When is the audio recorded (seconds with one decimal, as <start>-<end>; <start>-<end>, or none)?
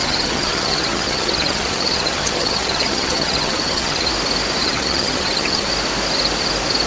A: 4.1-4.6; 5.7-6.9